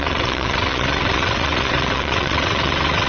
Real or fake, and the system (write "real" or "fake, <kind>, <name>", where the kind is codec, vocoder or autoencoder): fake, vocoder, WaveNeXt